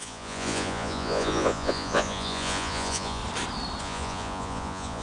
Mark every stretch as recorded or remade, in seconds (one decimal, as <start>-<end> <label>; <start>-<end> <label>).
0.0-3.2 remade; 3.2-3.8 recorded; 3.8-5.0 remade